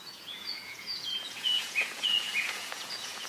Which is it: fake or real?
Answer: fake